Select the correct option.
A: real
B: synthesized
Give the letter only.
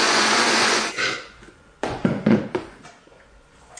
B